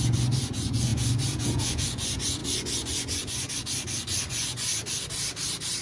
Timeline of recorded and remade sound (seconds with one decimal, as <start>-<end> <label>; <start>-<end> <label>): 0.0-4.7 remade; 4.7-5.8 recorded